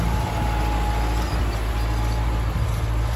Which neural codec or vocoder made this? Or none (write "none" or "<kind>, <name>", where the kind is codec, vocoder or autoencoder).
none